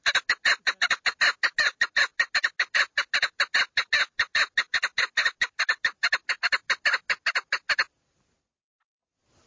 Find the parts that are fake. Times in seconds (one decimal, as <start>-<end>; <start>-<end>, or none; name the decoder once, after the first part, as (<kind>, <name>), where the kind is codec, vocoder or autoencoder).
none

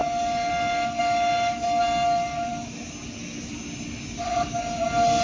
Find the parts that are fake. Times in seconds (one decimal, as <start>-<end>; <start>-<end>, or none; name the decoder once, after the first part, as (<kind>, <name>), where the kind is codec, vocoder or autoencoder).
none